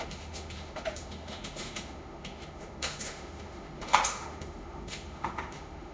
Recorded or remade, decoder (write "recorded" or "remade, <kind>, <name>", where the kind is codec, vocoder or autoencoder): remade, autoencoder, DAC-VAE